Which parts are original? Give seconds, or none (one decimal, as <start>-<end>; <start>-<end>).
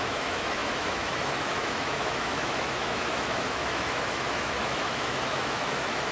none